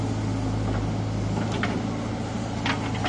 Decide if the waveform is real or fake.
real